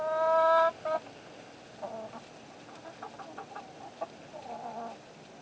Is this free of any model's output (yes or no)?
yes